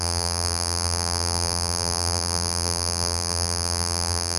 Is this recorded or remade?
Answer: remade